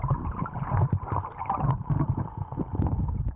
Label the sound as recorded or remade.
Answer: recorded